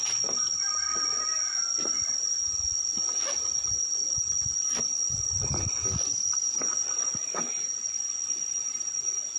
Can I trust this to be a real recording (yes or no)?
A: yes